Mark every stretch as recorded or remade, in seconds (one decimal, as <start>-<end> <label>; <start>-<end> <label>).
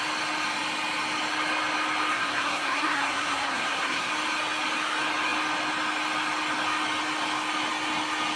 0.0-2.1 recorded; 2.1-4.1 remade; 4.1-8.4 recorded